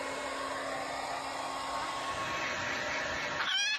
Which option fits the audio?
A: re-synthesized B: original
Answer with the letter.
B